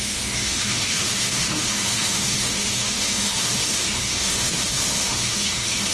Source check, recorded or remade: remade